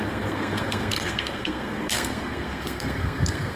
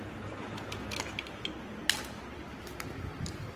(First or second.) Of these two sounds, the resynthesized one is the first